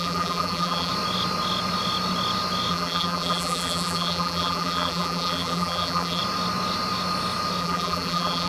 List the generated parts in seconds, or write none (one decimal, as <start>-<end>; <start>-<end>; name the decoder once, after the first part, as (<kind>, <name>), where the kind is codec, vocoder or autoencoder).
0.0-0.9 (vocoder, BigVGAN v2); 2.7-6.2; 7.6-8.5